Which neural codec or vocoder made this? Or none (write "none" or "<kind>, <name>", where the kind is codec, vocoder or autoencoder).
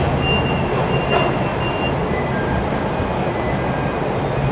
none